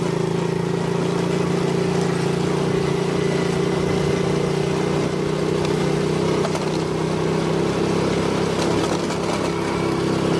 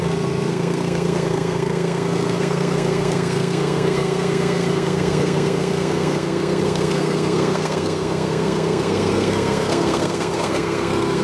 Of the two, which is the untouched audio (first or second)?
first